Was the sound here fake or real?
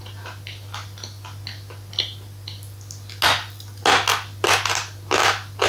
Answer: real